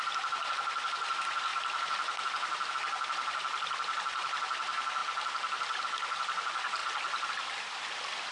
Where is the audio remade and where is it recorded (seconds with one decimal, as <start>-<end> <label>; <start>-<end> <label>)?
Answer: 0.0-8.3 recorded